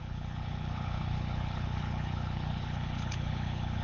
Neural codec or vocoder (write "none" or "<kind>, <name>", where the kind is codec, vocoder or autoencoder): codec, HILCodec